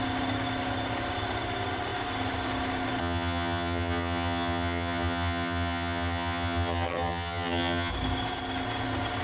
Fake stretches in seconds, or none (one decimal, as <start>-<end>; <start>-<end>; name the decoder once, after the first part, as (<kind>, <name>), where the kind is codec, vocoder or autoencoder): 3.0-7.9 (vocoder, HiFi-GAN)